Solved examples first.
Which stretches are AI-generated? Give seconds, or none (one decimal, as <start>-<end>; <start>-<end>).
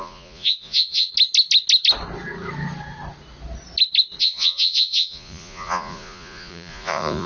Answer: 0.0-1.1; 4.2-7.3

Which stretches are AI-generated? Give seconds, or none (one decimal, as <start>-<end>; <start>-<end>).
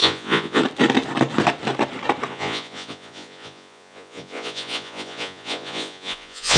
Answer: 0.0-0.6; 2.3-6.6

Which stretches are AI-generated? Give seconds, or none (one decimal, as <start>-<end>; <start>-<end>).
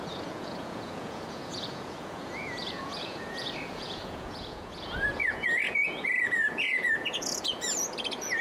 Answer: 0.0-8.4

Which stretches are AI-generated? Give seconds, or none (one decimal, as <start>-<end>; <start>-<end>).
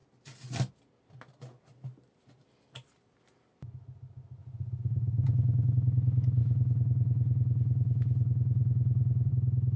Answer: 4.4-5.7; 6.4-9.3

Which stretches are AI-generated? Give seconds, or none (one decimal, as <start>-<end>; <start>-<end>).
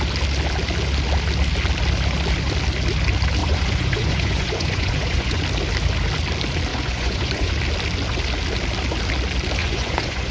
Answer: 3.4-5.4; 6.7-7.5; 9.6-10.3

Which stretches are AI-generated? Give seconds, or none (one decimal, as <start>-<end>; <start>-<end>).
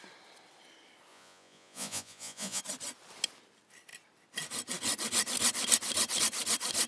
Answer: 1.1-2.6